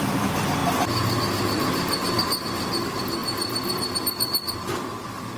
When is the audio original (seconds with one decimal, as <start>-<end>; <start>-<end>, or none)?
0.0-5.4